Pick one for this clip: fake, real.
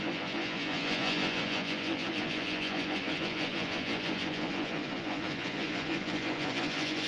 fake